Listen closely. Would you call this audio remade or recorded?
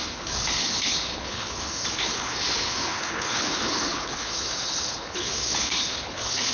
remade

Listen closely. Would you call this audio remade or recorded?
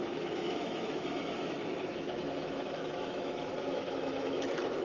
remade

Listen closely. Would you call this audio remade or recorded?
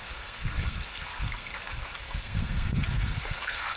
remade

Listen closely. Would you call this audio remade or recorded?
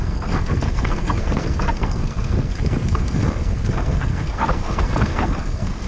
remade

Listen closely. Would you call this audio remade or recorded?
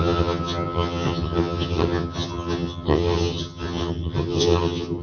remade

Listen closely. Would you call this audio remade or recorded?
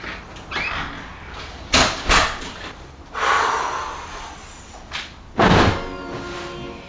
recorded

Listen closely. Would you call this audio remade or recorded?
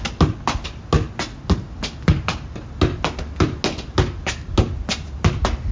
recorded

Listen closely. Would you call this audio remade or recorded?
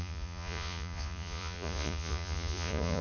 remade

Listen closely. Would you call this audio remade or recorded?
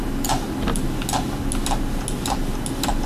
recorded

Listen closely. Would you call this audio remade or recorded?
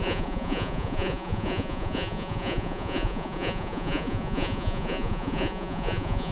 remade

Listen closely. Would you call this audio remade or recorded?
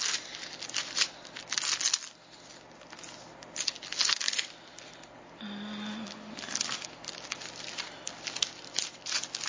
recorded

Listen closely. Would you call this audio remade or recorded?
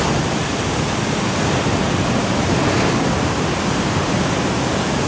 recorded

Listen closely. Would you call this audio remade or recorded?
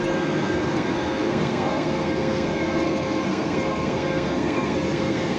remade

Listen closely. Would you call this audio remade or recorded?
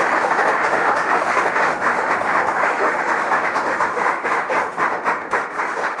remade